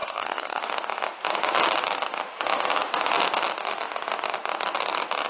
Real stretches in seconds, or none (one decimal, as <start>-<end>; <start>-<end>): 0.6-5.3